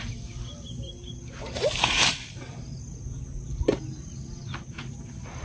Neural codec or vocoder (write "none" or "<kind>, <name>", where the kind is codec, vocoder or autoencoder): none